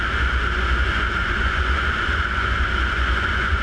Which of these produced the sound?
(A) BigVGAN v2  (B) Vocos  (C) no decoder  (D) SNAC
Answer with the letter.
B